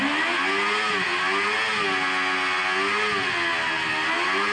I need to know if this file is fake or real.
real